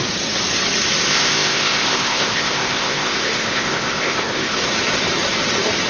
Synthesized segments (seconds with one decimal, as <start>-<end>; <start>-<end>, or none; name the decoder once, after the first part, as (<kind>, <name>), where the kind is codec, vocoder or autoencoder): 1.1-4.6 (codec, ZipCodec)